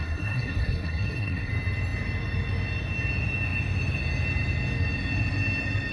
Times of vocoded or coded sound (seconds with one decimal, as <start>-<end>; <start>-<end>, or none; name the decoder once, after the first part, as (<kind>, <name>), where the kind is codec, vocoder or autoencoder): 0.0-1.5 (codec, SNAC)